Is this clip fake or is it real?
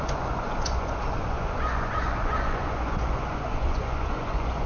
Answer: fake